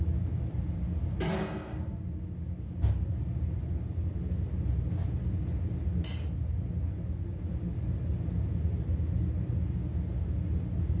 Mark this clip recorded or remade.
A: recorded